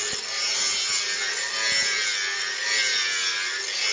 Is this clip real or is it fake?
real